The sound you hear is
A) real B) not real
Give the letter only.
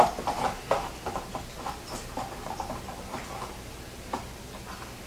A